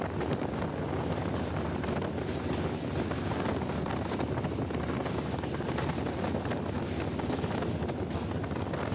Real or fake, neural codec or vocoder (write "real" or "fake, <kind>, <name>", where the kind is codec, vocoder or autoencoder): real